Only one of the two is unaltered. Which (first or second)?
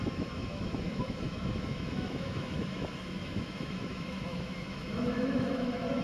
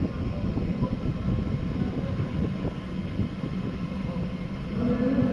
second